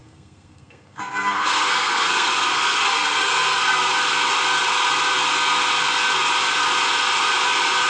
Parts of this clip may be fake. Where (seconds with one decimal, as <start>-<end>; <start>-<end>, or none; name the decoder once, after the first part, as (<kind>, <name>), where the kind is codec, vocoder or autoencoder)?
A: 0.0-3.9 (codec, SNAC)